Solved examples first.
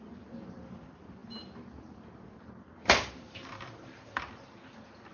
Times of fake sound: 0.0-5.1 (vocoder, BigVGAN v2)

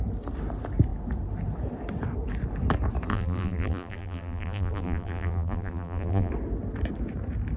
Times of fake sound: 3.1-6.3 (vocoder, BigVGAN v2)

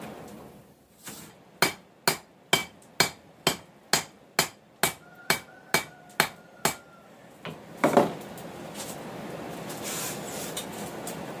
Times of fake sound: none